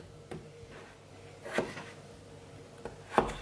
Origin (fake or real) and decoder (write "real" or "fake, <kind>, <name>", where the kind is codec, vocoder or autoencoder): real